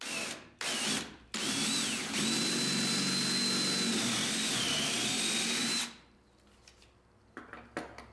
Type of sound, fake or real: real